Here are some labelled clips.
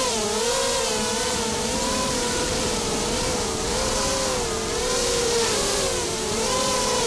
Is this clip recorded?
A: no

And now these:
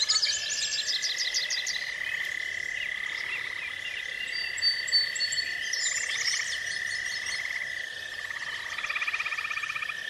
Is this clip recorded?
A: yes